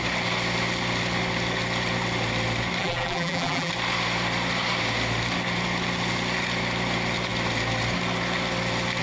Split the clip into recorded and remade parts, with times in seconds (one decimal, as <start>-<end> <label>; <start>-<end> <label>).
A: 0.0-2.8 recorded; 2.8-3.7 remade; 3.7-9.0 recorded